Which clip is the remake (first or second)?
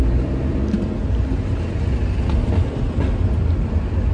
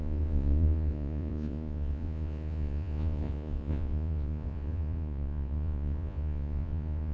second